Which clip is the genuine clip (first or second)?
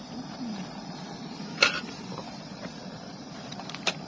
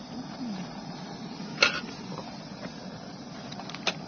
second